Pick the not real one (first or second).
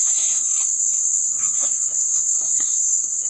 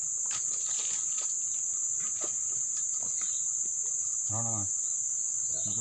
first